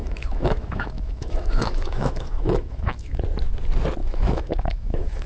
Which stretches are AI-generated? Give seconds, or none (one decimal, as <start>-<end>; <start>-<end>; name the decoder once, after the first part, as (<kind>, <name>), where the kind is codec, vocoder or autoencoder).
0.0-3.2 (autoencoder, DAC-VAE); 4.0-5.3